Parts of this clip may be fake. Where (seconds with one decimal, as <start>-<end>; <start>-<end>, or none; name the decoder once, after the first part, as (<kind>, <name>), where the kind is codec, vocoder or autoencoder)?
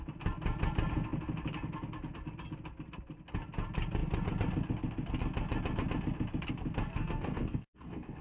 6.9-8.2 (codec, DAC)